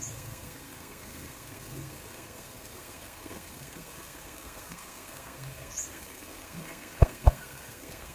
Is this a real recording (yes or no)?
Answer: no